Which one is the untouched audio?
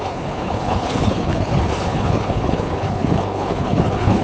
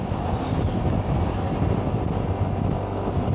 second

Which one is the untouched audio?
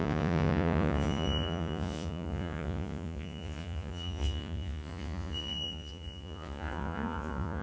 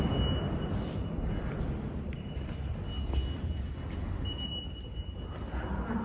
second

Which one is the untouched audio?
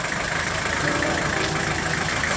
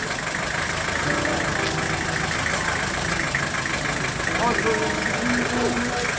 second